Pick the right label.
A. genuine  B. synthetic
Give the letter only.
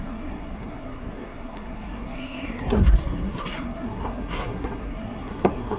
B